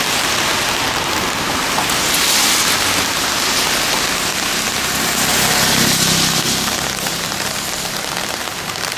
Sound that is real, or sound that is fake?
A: real